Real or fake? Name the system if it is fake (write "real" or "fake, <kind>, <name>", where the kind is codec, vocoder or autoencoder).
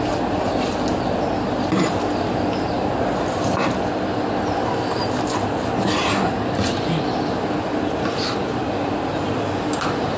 real